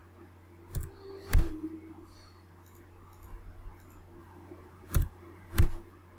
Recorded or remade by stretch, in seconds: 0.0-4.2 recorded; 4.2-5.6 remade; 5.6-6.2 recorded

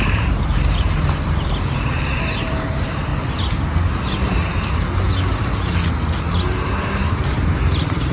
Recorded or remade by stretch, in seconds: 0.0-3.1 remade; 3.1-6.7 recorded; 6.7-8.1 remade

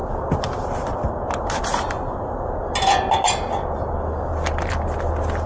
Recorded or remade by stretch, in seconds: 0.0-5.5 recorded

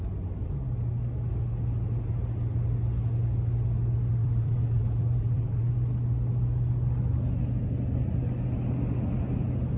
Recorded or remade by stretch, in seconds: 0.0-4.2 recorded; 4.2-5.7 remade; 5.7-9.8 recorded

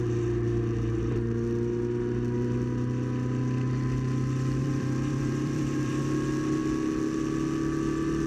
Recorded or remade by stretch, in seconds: 0.0-4.6 recorded; 4.6-6.0 remade; 6.0-8.3 recorded

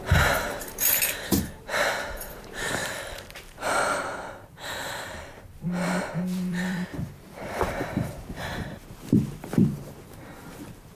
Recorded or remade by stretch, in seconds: 0.0-10.9 remade